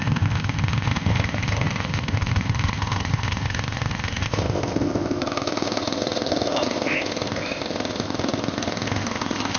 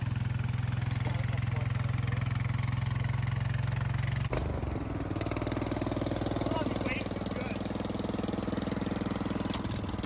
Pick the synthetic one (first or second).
first